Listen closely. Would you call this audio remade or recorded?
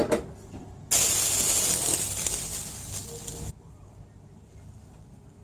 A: recorded